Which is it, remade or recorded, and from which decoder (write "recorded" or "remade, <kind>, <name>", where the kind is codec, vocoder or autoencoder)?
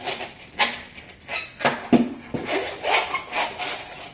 recorded